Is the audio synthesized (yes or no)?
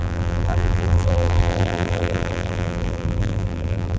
yes